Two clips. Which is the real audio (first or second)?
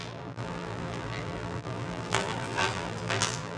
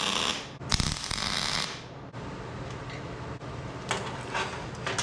second